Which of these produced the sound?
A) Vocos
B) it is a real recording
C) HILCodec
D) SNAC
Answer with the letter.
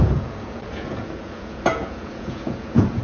A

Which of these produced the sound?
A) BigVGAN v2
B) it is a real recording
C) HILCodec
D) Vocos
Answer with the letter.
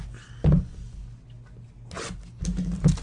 B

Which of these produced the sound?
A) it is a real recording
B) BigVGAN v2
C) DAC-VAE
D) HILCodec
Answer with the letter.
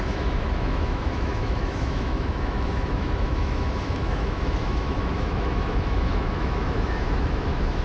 C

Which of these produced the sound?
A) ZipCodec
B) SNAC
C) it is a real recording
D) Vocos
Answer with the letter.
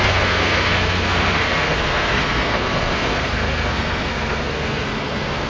B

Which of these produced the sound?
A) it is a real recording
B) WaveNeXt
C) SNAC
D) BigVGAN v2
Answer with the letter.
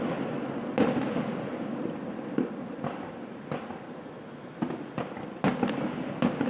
A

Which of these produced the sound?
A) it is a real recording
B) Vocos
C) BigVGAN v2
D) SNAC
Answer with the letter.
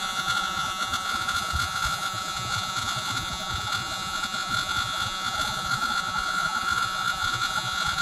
B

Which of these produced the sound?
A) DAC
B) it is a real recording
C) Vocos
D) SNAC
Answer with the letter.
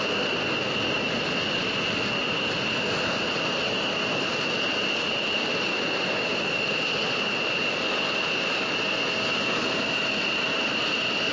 B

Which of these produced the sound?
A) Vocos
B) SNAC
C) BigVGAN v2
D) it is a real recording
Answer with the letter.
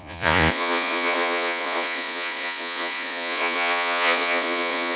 A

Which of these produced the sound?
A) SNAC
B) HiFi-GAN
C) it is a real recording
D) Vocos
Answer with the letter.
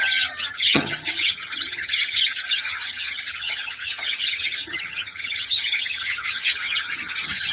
B